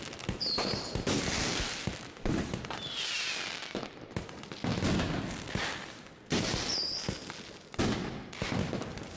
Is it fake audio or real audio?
real